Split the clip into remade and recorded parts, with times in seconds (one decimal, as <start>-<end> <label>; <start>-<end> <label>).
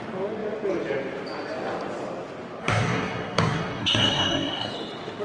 0.0-2.6 recorded; 2.6-4.7 remade; 4.7-5.2 recorded